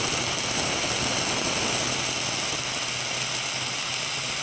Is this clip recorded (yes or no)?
yes